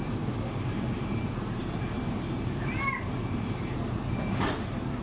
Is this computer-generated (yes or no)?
yes